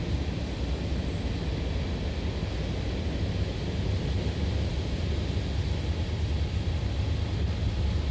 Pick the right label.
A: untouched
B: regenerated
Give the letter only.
A